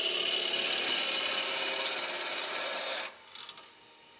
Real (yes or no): yes